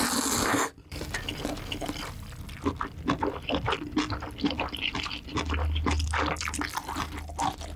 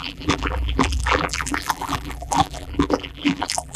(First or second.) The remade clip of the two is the second